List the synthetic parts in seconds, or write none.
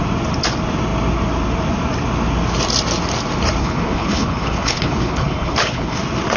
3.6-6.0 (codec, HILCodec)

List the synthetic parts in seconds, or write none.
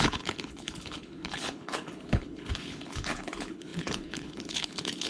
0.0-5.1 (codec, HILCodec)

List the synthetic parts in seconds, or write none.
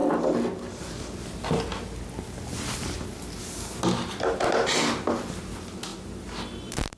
none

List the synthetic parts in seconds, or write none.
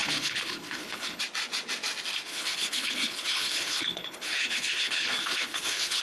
0.0-1.2 (codec, HILCodec); 2.3-6.0